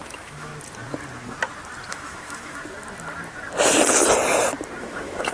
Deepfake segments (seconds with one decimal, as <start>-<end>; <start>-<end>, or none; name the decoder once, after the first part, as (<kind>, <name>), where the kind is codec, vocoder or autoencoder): 0.0-0.5 (autoencoder, DAC-VAE); 1.9-2.6; 4.8-5.3